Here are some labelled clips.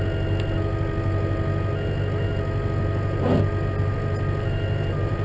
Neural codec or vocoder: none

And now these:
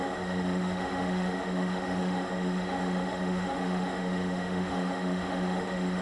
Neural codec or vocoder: autoencoder, DAC-VAE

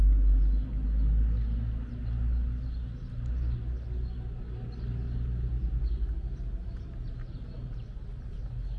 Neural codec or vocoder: none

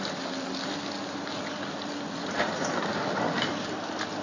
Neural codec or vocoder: none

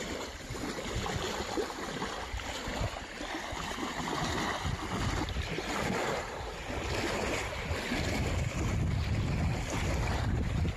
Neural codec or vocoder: none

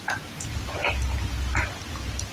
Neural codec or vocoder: none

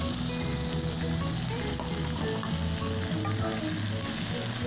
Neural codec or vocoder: none